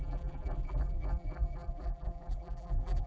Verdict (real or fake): fake